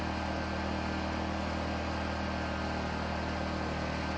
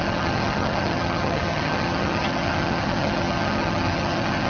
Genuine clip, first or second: first